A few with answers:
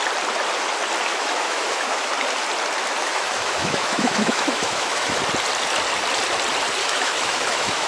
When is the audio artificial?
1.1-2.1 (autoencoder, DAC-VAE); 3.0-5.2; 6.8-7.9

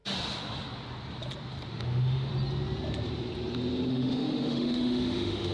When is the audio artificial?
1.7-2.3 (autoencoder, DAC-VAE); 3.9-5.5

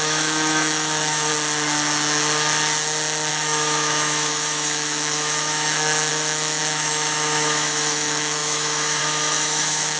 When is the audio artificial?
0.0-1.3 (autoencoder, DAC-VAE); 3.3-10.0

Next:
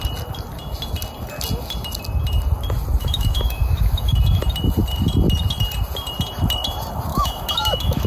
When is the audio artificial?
3.0-4.1 (autoencoder, DAC-VAE); 7.1-8.1

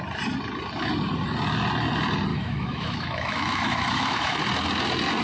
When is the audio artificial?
2.3-4.4 (autoencoder, DAC-VAE)

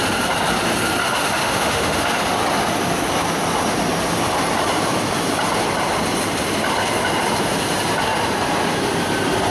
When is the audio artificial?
1.0-2.1 (autoencoder, DAC-VAE)